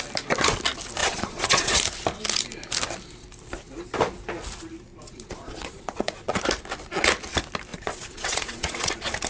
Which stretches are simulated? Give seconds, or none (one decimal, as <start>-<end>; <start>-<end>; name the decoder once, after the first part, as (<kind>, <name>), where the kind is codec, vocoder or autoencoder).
1.0-1.8 (vocoder, Vocos); 4.9-6.4; 7.7-8.9

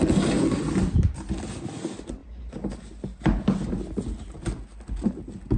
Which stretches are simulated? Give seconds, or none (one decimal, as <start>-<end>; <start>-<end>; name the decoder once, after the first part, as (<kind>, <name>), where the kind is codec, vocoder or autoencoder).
none

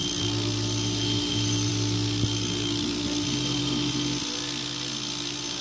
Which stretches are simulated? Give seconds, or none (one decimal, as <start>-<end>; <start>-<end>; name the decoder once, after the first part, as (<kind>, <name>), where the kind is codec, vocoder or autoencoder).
none

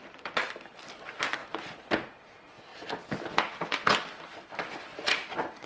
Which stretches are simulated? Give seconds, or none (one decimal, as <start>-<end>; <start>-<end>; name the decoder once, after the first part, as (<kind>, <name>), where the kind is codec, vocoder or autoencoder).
2.7-4.8 (vocoder, BigVGAN v2)

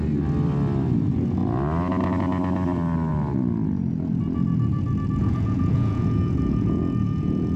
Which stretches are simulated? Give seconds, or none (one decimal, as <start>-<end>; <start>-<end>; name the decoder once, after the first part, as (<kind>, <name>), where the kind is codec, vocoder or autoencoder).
5.2-7.6 (vocoder, Vocos)

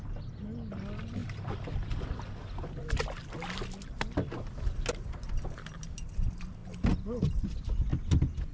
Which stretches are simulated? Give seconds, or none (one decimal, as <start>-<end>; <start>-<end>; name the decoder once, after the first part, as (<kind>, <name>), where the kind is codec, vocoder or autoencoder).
none